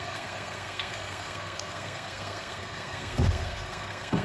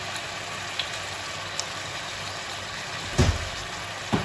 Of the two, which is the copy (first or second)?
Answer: first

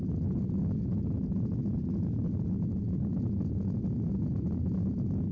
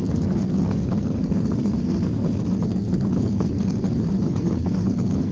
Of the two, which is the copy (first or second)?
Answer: second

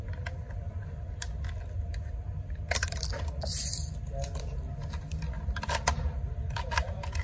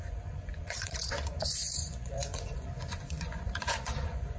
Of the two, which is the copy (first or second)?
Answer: second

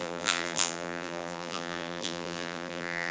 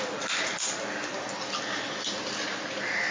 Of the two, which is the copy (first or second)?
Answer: first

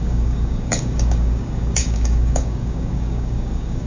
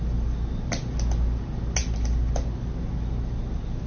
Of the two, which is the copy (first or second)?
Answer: first